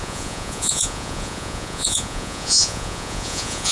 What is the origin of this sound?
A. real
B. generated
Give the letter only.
B